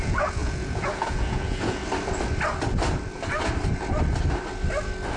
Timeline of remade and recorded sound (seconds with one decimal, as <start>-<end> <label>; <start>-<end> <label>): 0.0-1.8 remade; 1.8-5.2 recorded